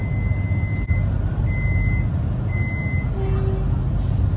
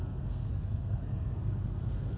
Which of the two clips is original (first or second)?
first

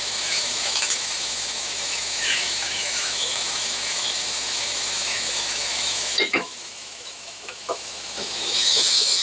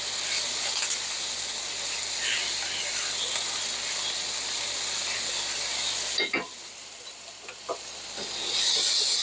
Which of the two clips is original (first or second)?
second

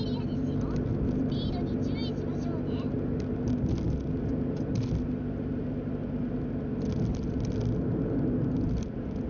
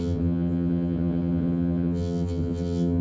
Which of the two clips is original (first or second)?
first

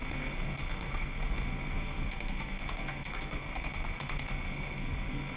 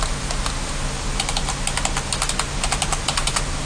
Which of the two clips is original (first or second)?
second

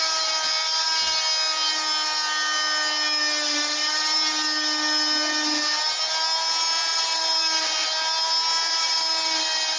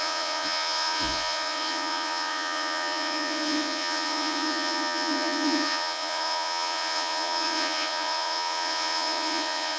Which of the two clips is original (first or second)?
first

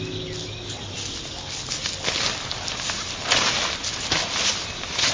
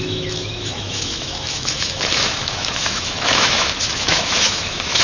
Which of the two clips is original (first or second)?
first